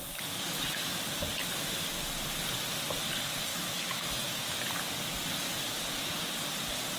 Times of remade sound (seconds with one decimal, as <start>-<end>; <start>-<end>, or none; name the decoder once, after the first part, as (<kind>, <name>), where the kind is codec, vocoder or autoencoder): 0.0-1.0 (autoencoder, DAC-VAE); 3.5-4.6